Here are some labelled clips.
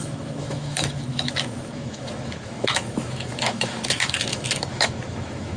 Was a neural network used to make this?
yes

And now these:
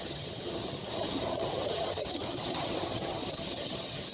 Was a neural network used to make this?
yes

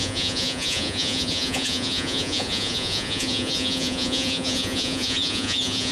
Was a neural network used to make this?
yes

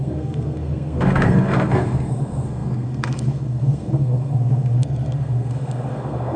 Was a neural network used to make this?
yes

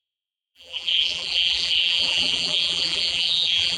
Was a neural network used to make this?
yes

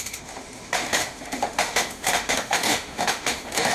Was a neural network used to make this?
yes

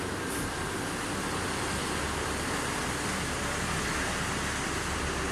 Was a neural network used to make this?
no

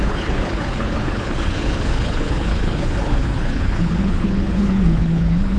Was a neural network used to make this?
yes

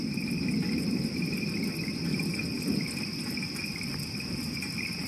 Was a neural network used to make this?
no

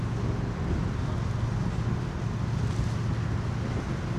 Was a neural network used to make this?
no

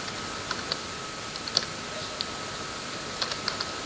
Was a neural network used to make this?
no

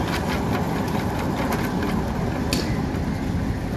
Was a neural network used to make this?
no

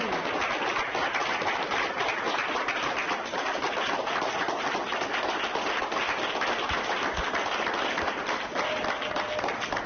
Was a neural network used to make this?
no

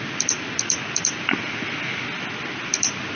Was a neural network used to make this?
no